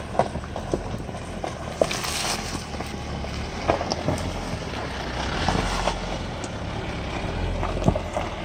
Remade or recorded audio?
recorded